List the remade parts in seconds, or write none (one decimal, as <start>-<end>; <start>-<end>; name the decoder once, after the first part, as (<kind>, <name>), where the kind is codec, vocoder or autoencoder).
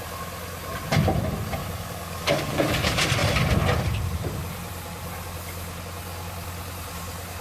1.6-2.7 (codec, DAC)